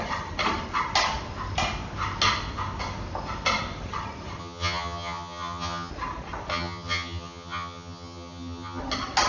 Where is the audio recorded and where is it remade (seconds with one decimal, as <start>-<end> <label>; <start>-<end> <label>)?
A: 0.0-4.4 recorded; 4.4-5.9 remade; 5.9-6.5 recorded; 6.5-8.8 remade; 8.8-9.3 recorded